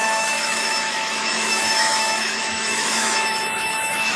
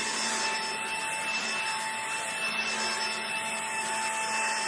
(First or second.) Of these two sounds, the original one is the second